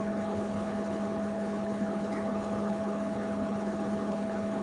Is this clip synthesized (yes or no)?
yes